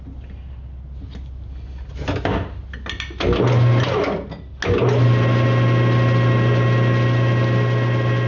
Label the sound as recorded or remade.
recorded